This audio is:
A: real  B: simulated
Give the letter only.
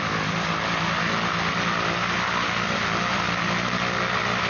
A